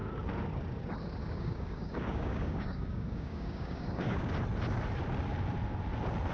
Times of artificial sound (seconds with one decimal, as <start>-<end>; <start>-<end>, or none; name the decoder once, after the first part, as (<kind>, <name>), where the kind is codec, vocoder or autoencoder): 1.2-4.3 (codec, DAC)

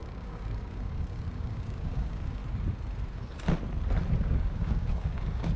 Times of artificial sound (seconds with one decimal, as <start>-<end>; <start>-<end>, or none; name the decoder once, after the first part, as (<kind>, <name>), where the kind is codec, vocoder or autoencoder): 0.0-2.4 (codec, DAC); 4.2-5.6

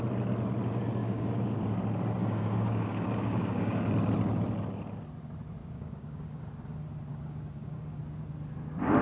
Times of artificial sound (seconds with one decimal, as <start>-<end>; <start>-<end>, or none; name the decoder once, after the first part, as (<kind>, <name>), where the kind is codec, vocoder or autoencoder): 1.0-1.6 (codec, DAC); 2.2-3.9; 5.6-6.4; 7.1-8.0

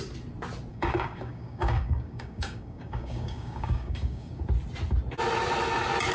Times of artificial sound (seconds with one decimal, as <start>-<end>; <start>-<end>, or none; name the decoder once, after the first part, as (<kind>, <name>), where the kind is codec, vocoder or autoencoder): 0.7-4.4 (codec, DAC)

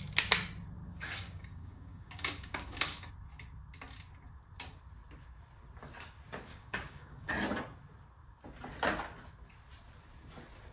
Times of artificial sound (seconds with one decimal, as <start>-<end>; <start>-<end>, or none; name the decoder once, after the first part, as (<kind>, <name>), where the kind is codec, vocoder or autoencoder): 0.8-3.1 (codec, DAC); 6.5-7.3

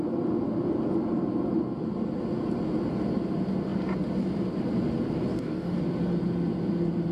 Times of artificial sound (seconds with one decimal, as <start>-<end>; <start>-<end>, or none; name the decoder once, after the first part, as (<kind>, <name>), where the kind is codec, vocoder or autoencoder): 5.3-5.8 (codec, DAC)